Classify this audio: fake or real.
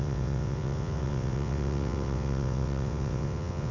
fake